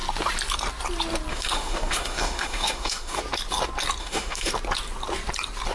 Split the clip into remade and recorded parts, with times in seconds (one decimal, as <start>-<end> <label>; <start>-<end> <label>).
0.0-1.3 recorded; 1.3-3.2 remade; 3.2-4.0 recorded; 4.0-4.5 remade; 4.5-5.7 recorded